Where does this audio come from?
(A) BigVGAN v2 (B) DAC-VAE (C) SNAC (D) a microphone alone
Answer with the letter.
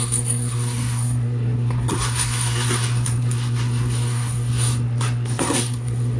C